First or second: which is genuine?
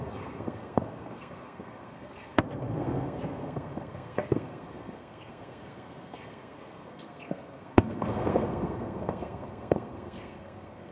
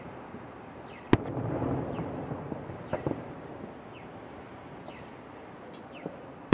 second